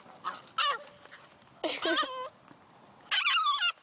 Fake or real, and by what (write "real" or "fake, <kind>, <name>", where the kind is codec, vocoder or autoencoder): real